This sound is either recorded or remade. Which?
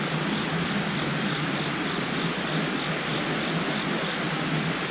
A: recorded